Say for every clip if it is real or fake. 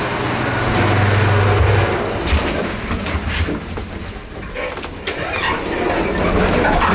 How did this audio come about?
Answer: real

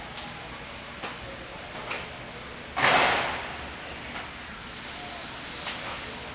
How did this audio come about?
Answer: real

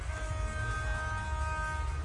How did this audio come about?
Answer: real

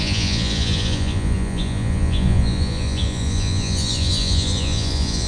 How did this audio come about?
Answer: fake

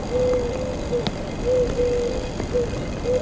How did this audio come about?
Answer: real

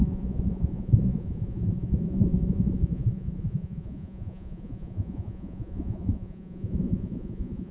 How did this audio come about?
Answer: fake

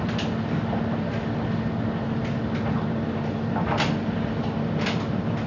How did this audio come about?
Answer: real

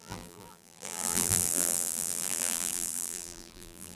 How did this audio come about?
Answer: fake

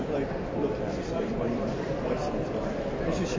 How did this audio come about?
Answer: fake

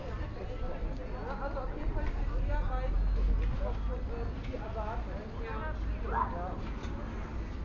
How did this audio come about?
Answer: real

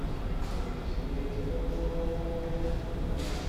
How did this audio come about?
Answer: real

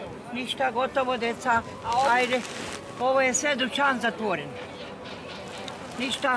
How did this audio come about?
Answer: real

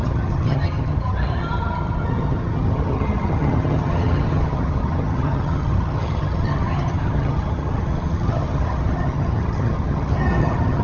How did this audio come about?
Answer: fake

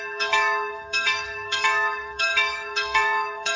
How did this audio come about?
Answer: fake